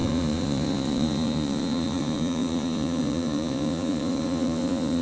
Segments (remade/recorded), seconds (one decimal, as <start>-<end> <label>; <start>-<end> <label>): 0.0-5.0 remade